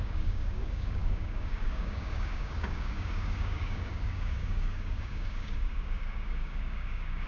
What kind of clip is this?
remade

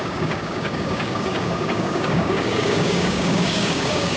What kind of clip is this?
remade